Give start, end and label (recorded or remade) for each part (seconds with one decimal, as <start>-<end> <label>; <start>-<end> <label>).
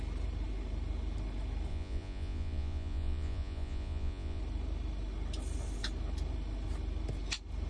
0.0-1.7 recorded; 1.7-4.4 remade; 4.4-7.7 recorded